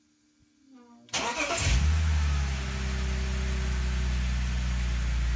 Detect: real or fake real